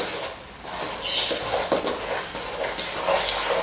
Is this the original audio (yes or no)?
yes